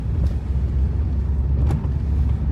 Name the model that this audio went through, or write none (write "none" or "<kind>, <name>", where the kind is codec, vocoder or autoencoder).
none